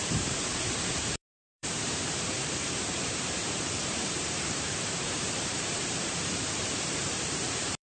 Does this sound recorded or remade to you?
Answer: remade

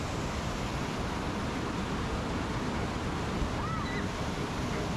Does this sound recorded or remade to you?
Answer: recorded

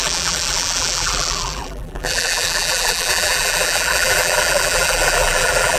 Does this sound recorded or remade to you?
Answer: remade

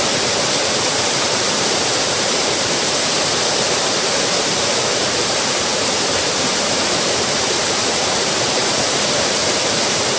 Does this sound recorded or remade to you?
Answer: remade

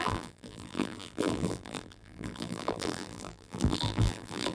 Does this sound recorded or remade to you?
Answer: remade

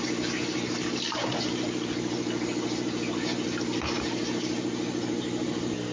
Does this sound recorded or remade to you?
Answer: recorded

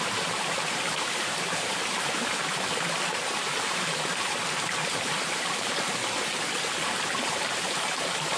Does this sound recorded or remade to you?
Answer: remade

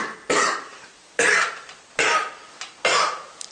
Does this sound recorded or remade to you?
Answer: recorded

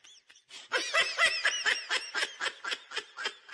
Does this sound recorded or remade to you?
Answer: recorded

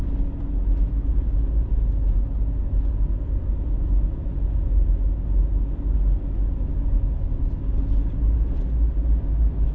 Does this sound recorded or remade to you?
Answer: recorded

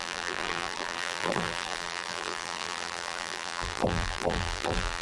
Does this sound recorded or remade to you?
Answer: remade